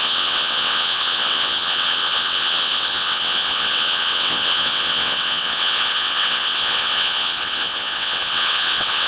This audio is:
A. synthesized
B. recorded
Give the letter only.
A